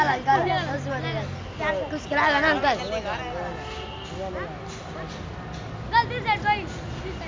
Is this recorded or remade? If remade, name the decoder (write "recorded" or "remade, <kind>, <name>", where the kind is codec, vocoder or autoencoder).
recorded